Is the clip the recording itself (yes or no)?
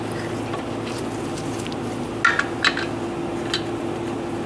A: yes